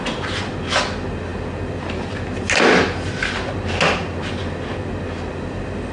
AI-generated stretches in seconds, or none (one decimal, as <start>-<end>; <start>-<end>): none